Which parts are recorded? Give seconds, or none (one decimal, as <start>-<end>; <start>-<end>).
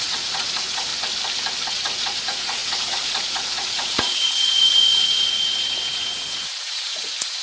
0.9-1.7